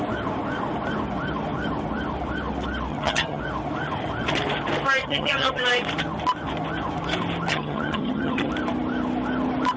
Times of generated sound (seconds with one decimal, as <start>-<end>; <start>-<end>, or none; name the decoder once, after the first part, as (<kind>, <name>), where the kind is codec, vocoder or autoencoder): 2.9-3.4 (vocoder, HiFi-GAN); 5.0-5.6; 7.5-8.5